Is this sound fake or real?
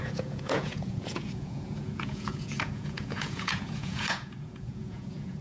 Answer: fake